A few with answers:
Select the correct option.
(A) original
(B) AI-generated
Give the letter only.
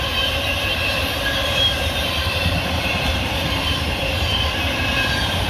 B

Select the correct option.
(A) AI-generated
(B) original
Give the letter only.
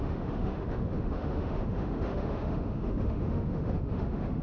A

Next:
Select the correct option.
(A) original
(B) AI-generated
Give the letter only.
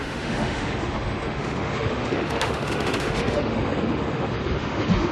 B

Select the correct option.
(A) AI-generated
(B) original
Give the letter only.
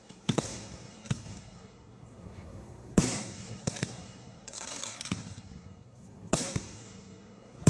A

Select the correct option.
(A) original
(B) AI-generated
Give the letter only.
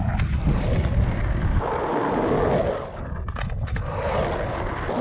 A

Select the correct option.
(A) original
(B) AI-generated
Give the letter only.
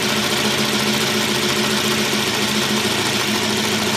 A